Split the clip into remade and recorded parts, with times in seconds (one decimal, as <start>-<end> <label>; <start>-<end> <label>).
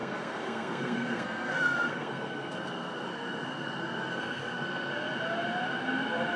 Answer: 0.0-4.9 remade; 4.9-6.4 recorded